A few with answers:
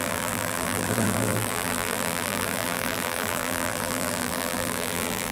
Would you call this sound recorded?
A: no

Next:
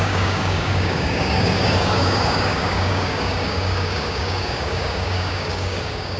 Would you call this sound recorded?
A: no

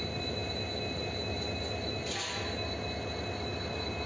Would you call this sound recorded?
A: yes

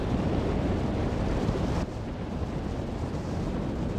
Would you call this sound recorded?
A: yes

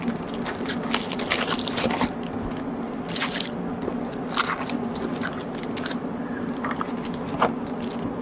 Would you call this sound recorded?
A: yes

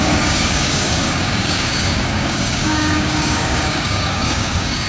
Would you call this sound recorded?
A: no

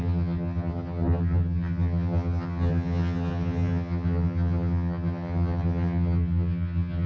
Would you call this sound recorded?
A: no